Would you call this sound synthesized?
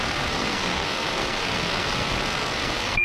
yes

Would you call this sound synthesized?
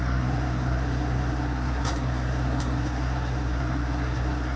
yes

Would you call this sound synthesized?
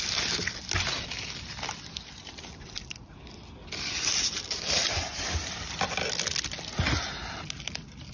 no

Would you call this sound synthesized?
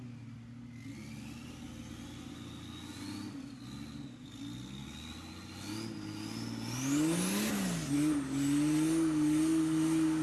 no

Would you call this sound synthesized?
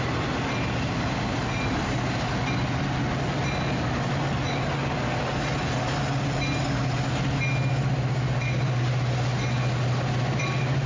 no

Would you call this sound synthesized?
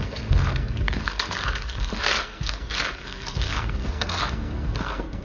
yes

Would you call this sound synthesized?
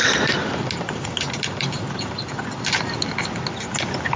no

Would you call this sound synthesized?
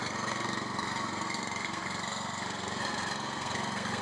yes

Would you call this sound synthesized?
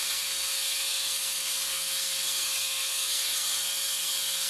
yes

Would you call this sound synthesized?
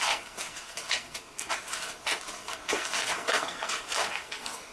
yes